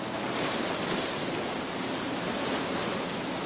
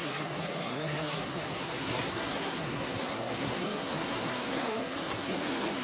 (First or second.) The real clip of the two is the first